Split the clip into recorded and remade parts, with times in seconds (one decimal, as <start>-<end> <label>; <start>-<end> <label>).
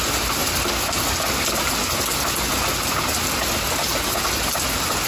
0.0-5.1 recorded